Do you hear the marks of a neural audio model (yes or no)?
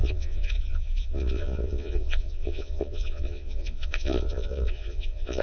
yes